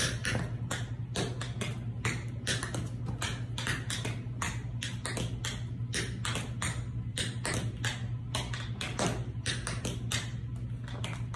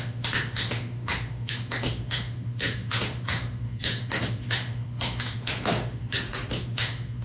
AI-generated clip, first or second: second